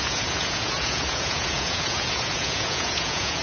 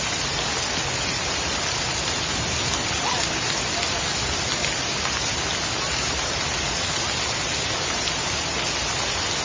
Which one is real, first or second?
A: second